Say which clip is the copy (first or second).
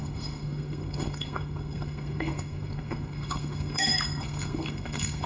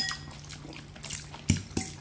first